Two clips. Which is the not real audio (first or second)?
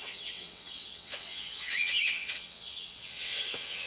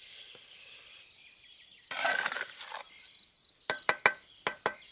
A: first